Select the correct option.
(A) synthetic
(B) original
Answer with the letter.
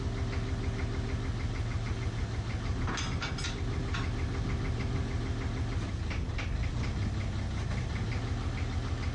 B